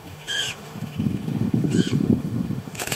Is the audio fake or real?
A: fake